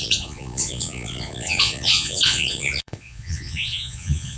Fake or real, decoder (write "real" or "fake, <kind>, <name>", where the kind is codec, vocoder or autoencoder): fake, vocoder, Vocos